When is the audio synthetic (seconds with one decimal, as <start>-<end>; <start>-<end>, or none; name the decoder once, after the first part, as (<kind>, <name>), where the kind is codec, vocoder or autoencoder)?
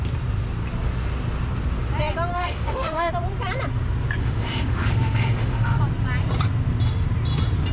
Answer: 2.3-3.1 (autoencoder, DAC-VAE); 4.2-5.8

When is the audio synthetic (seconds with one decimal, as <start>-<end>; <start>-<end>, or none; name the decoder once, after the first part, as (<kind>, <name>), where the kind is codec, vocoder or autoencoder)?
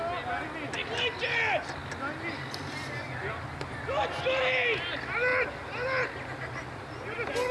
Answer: none